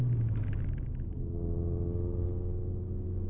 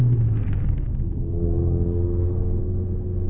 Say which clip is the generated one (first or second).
second